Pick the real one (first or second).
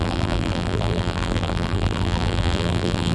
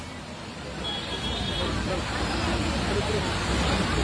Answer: second